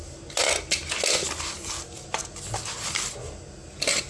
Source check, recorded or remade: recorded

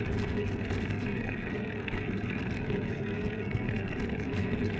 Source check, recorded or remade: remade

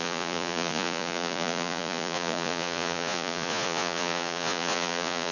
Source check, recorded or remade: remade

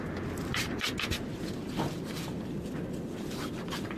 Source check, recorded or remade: recorded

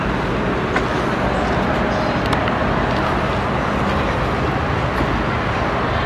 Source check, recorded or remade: recorded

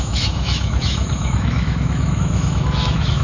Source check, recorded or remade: remade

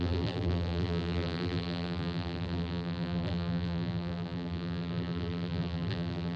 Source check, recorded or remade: remade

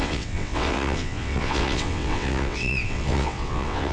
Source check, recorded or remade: remade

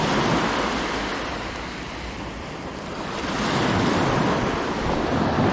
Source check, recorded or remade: recorded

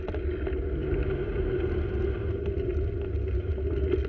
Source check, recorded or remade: recorded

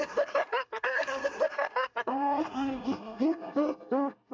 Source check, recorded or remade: remade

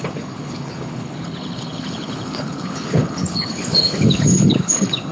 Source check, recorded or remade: remade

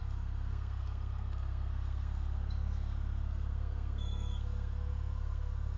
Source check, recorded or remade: remade